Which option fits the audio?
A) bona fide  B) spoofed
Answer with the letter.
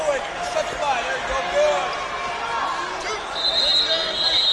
A